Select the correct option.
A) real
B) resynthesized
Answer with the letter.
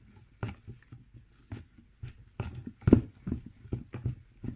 A